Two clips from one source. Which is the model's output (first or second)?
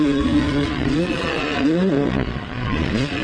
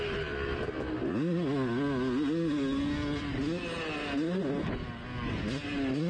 first